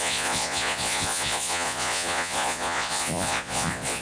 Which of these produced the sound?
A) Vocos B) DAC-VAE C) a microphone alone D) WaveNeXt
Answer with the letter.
A